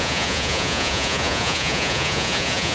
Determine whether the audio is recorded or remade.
remade